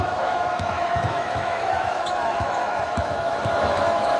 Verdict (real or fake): fake